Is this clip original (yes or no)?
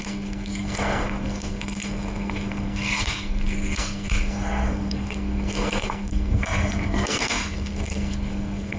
no